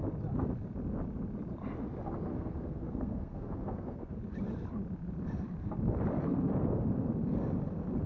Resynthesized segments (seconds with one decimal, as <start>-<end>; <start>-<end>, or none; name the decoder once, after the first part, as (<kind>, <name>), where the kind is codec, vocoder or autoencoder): 2.3-4.2 (codec, SNAC)